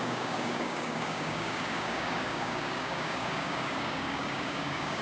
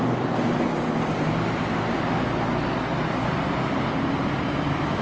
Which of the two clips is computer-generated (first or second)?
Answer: first